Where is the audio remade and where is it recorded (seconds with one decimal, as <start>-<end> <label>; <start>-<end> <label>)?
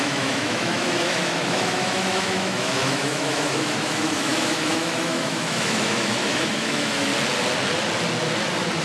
0.0-7.1 remade; 7.1-8.8 recorded